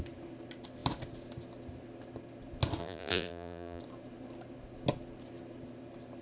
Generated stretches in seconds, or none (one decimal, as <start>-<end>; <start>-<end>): 2.8-3.8